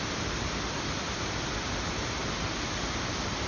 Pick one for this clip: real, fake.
real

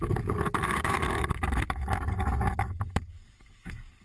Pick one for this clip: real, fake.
fake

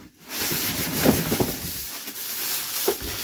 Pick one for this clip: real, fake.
fake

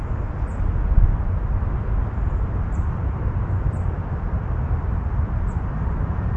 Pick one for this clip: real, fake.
real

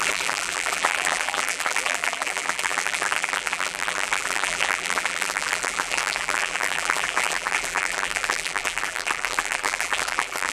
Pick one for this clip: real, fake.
fake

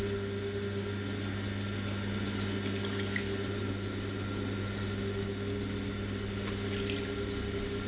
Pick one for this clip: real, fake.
real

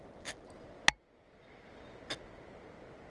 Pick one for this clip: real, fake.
real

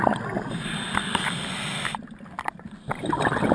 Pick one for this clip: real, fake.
real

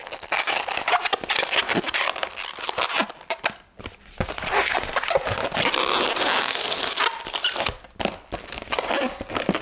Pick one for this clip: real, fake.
real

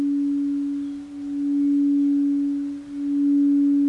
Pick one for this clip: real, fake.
real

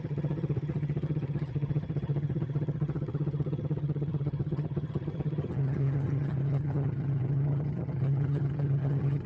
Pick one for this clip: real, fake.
fake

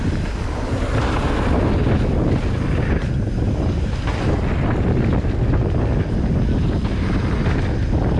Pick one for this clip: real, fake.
real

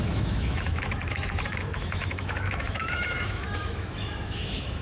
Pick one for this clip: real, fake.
fake